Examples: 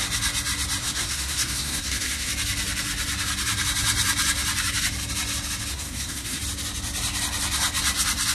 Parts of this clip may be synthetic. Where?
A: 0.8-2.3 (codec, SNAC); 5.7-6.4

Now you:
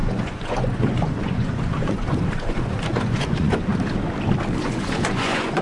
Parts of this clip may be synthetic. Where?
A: 0.0-3.7 (vocoder, Vocos); 4.6-5.6

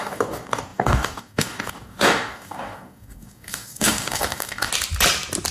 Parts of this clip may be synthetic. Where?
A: 0.0-4.7 (codec, DAC)

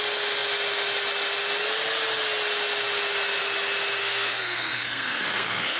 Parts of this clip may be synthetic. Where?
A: 4.0-5.8 (codec, SNAC)